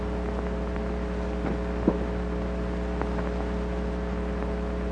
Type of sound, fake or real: real